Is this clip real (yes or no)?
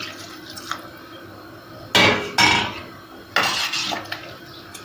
yes